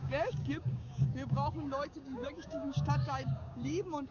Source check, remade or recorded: remade